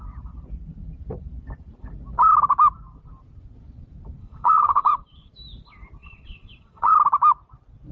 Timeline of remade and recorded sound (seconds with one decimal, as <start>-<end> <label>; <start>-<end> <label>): 0.0-4.2 recorded; 4.2-5.3 remade; 5.3-6.0 recorded; 6.0-6.9 remade; 6.9-7.9 recorded